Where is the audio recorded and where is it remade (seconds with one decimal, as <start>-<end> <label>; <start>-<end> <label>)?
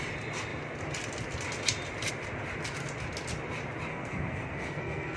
0.0-3.9 recorded; 3.9-5.2 remade